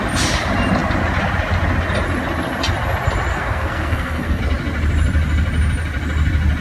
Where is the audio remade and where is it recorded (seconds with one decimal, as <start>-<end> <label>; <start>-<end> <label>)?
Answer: 0.0-3.3 recorded; 3.3-4.4 remade; 4.4-6.6 recorded